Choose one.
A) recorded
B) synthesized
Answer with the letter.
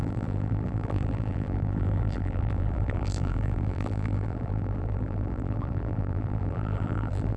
B